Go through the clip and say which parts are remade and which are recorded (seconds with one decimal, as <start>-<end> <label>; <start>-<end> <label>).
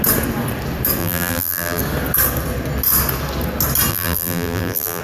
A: 0.0-1.0 recorded; 1.0-1.8 remade; 1.8-3.9 recorded; 3.9-5.0 remade